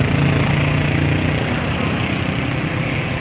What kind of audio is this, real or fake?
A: real